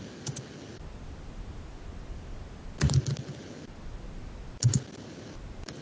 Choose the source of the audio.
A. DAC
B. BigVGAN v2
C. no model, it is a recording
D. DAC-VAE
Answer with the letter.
C